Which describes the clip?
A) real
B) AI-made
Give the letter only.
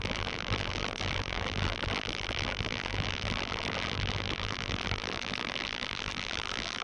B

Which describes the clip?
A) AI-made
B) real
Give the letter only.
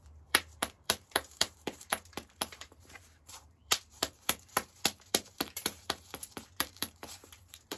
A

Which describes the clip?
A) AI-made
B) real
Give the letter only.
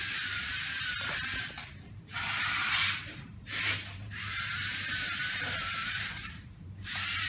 A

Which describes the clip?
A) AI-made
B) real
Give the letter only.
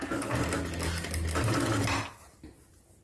B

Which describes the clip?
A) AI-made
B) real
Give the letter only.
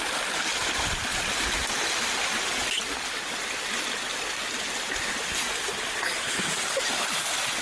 B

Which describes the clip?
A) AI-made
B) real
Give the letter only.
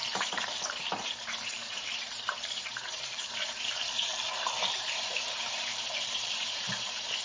A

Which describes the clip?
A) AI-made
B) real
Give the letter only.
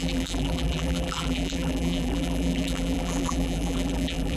A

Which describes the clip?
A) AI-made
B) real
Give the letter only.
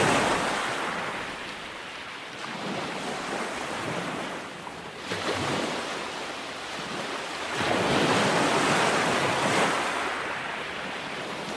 B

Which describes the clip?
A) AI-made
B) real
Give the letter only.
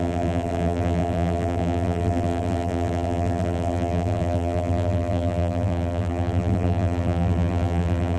A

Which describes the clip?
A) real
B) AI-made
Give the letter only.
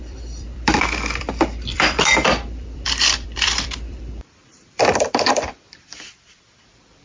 B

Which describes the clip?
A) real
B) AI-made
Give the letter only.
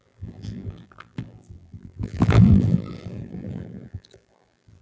B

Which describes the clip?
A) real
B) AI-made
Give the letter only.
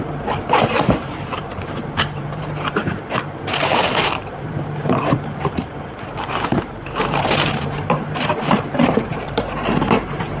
B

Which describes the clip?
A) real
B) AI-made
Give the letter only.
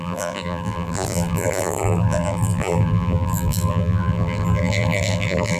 B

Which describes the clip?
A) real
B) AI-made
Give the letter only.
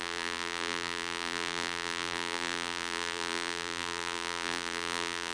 B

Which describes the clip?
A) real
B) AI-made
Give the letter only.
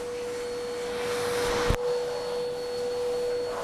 A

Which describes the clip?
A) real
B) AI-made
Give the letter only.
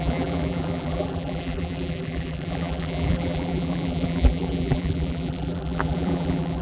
B